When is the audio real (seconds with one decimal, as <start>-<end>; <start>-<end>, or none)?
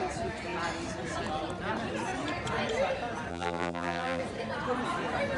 0.0-3.3; 4.2-5.4